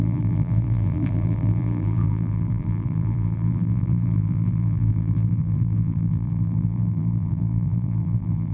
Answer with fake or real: fake